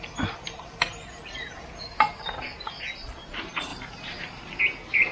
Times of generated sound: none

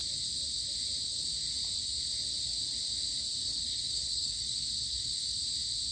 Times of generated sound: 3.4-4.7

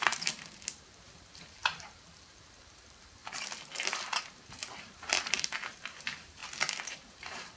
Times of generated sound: 0.0-3.2; 4.2-6.4; 6.9-7.6